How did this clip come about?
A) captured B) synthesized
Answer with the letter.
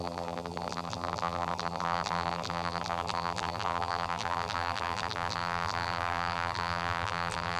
B